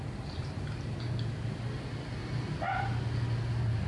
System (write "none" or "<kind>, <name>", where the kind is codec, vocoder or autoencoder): none